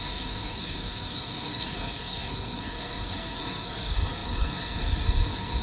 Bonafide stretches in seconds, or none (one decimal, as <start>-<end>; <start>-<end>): none

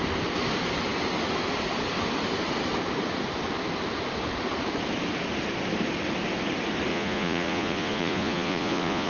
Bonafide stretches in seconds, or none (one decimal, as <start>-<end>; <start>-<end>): 0.0-6.9

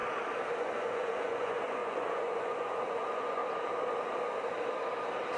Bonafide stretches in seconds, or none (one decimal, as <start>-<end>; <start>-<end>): 0.0-0.6; 3.4-5.4

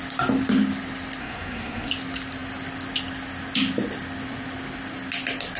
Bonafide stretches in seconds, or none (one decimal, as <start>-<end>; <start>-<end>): 0.0-1.2; 1.9-5.6

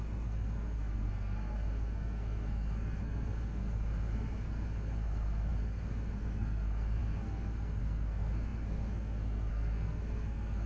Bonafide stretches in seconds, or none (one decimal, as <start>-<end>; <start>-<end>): none